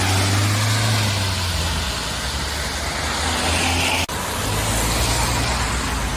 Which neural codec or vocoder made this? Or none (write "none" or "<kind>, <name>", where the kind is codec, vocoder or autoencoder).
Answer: none